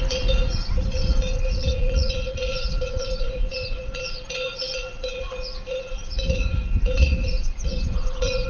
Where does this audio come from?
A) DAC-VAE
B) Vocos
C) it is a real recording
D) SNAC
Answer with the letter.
B